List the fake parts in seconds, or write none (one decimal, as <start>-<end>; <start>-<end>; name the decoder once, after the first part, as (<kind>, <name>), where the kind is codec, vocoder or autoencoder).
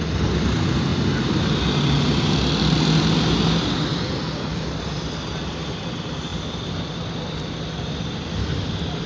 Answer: none